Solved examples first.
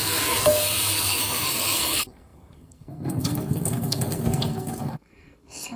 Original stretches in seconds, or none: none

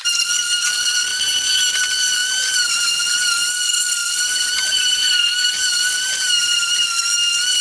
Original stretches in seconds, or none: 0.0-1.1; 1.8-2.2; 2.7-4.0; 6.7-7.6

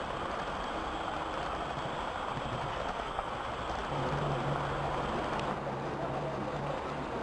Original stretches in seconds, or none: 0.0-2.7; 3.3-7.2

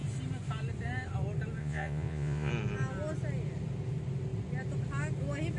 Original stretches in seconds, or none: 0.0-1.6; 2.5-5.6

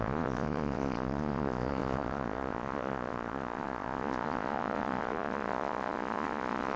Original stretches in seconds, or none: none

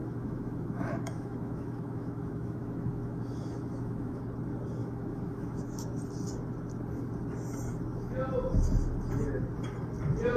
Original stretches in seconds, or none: 4.2-4.8; 5.9-10.4